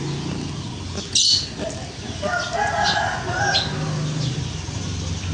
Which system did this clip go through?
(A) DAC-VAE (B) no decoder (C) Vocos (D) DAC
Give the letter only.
B